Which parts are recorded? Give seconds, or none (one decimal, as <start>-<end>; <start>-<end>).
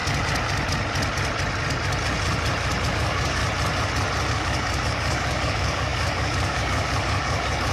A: 0.0-2.9; 3.4-4.3